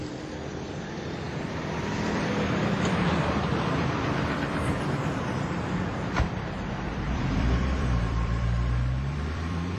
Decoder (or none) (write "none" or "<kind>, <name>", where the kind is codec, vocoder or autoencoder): vocoder, BigVGAN v2